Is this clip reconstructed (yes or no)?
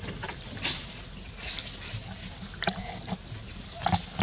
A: no